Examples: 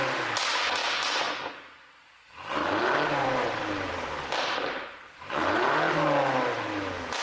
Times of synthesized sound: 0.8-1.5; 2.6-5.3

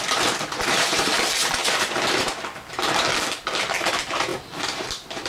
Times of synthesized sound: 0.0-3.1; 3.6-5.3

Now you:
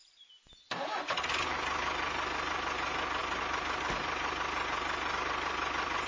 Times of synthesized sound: none

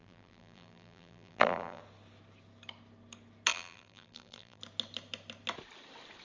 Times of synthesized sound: 0.0-1.8; 3.5-4.6

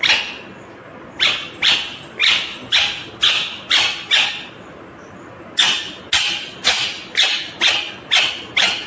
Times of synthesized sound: none